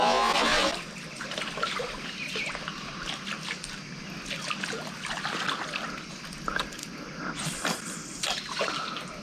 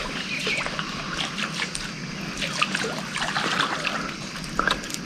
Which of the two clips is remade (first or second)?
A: second